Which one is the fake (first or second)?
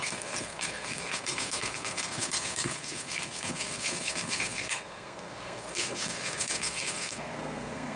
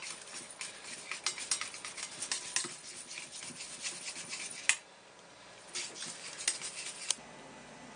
first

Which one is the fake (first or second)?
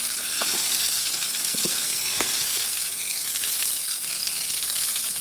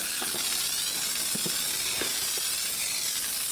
first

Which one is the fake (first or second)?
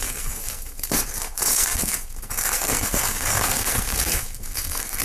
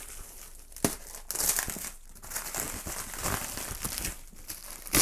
first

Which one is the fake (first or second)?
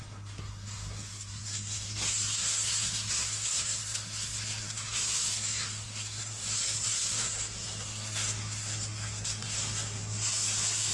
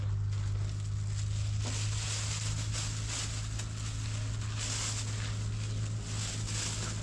first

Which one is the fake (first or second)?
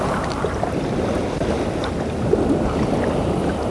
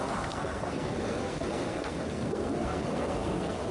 second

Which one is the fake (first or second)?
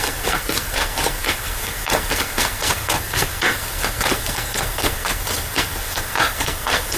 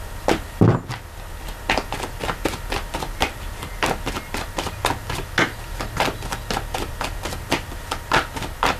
first